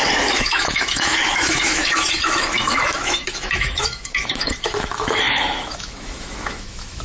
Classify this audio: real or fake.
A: fake